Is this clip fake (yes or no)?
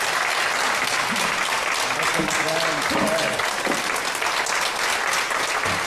no